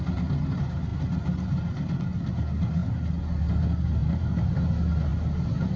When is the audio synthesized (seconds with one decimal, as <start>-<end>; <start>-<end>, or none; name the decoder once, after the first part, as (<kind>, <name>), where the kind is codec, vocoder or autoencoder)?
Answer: 4.0-4.5 (vocoder, BigVGAN v2)